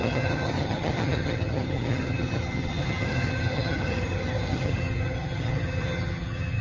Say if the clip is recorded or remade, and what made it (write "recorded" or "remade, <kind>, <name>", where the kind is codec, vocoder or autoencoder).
remade, vocoder, HiFi-GAN